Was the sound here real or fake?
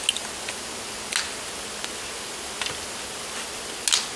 real